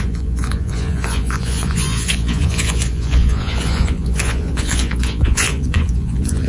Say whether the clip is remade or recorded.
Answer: remade